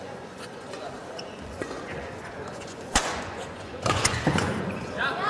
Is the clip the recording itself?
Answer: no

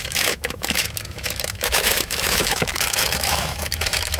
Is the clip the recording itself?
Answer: no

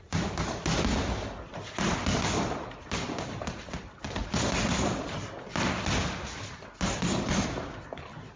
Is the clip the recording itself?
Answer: yes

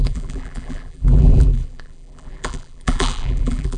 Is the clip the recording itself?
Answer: no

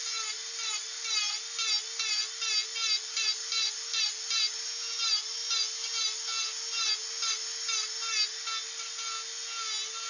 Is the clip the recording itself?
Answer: yes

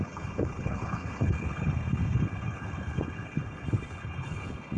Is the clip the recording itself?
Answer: no